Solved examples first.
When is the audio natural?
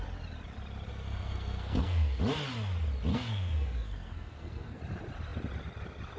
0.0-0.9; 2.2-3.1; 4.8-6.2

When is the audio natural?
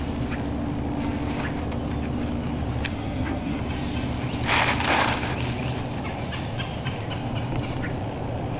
0.0-2.9; 3.6-8.6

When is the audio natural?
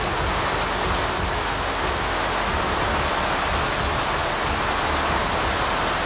0.0-6.1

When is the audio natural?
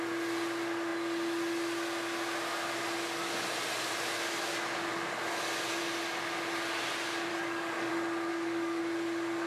0.0-7.3; 7.9-8.3; 8.8-9.5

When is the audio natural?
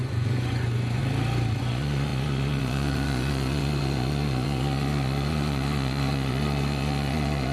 1.0-1.6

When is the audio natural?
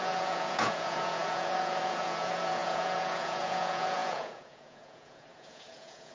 none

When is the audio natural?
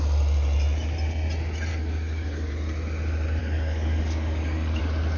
0.0-1.7; 2.5-3.4; 4.8-5.2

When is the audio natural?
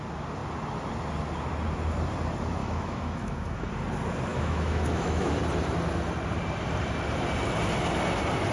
0.0-2.6; 3.7-4.3; 5.3-8.5